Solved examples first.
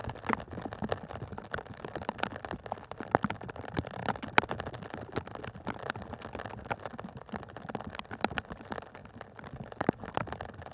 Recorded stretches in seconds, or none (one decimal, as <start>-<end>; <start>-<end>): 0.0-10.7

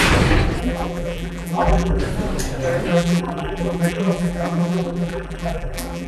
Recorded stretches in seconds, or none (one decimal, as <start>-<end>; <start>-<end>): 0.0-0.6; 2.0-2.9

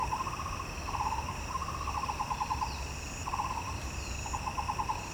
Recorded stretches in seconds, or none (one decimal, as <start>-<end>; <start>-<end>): 0.0-3.1

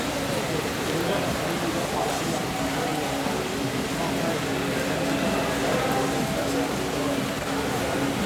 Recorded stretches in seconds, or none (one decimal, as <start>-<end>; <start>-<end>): 0.0-8.3

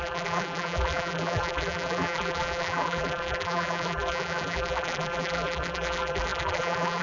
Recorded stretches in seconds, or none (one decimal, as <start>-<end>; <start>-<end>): none

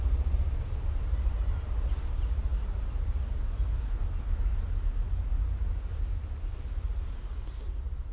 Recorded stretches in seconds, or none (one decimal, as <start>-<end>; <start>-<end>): 0.0-8.1

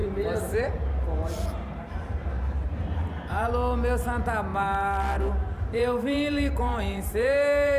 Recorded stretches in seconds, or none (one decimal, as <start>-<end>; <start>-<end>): 3.5-4.5